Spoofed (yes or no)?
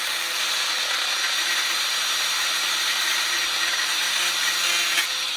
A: no